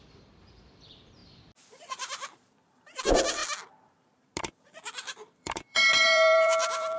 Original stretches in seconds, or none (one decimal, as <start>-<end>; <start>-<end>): 1.2-2.5; 3.4-4.4